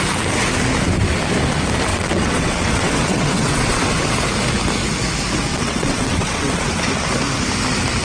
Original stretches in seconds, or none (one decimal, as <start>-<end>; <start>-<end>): 0.0-1.9; 4.1-5.5; 6.8-8.0